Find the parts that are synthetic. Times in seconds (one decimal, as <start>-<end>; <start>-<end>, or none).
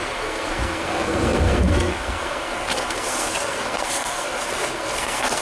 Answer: 0.0-5.4